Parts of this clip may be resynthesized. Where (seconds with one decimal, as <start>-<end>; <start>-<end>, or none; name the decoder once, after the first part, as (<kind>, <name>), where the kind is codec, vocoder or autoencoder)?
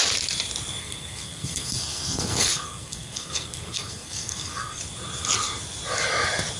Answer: 0.8-4.8 (codec, SNAC)